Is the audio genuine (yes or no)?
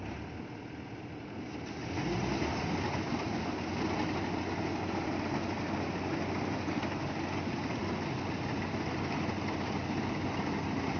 yes